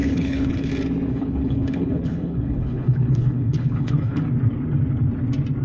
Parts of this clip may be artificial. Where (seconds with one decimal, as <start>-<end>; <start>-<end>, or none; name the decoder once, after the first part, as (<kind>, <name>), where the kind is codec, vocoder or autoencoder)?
0.0-0.7 (codec, HILCodec); 1.1-4.2